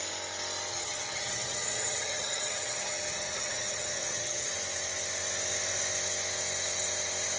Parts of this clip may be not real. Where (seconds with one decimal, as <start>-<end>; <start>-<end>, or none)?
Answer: 0.7-4.5